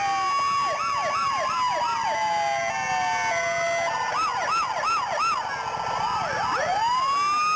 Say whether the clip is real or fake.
real